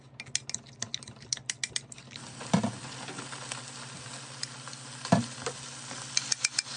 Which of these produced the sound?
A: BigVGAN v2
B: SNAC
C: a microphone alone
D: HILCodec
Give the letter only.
C